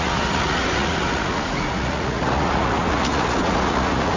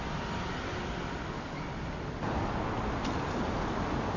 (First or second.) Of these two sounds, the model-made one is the first